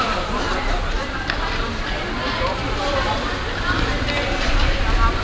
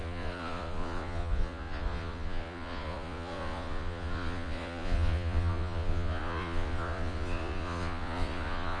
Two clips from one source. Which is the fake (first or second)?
second